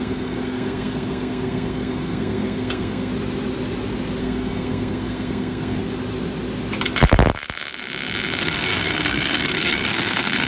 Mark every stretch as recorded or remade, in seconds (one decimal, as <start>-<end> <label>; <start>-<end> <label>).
0.0-3.1 remade; 3.1-4.2 recorded; 4.2-5.8 remade; 5.8-8.4 recorded; 8.4-10.5 remade